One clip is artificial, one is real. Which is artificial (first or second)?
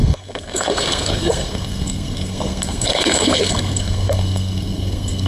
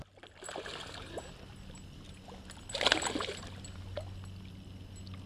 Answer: first